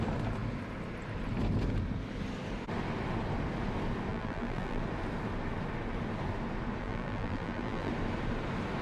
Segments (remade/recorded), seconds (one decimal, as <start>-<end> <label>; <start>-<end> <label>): 0.0-4.1 recorded; 4.1-4.8 remade; 4.8-6.8 recorded; 6.8-7.9 remade; 7.9-8.8 recorded